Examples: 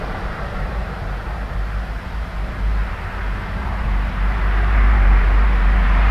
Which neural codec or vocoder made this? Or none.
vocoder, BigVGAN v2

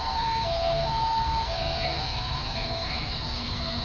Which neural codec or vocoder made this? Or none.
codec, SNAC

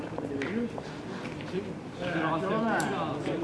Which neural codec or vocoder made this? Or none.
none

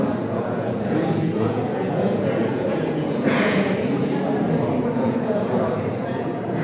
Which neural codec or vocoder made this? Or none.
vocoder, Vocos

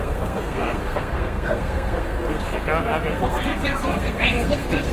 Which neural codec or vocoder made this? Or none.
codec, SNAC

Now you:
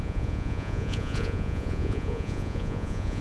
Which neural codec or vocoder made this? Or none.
vocoder, Vocos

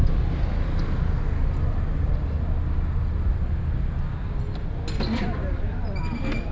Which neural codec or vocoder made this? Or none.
none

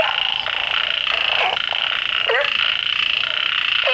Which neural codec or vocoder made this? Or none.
none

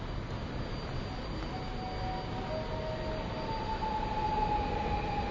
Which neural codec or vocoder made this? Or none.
none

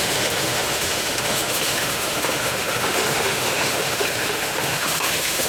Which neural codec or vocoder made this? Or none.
autoencoder, DAC-VAE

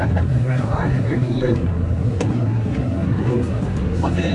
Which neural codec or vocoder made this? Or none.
codec, SNAC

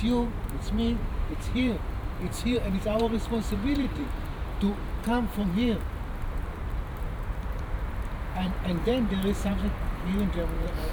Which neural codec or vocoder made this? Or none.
vocoder, BigVGAN v2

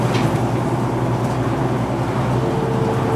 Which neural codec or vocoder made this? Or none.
none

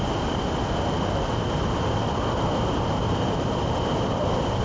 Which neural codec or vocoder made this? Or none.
none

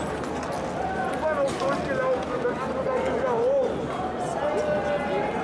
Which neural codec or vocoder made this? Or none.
none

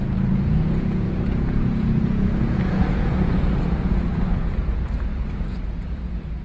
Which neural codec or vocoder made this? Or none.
vocoder, Vocos